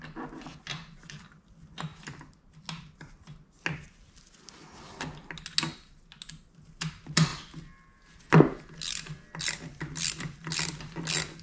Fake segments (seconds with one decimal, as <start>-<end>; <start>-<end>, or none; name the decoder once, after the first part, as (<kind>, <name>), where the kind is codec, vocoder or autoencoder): none

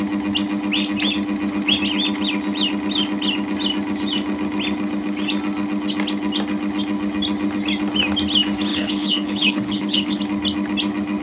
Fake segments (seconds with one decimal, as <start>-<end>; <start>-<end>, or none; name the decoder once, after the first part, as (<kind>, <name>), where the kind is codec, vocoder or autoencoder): 8.7-10.2 (codec, HILCodec)

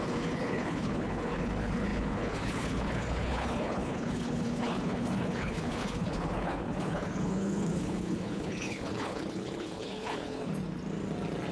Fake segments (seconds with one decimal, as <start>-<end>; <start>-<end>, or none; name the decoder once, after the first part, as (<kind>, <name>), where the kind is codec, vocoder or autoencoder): 0.0-10.5 (codec, HILCodec)